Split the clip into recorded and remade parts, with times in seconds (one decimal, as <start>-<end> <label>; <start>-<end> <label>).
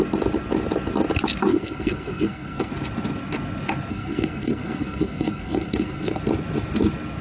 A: 0.0-1.5 recorded; 1.5-2.7 remade; 2.7-3.9 recorded; 3.9-6.2 remade; 6.2-7.2 recorded